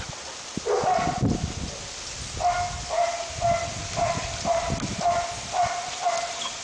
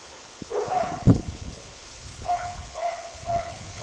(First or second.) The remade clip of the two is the second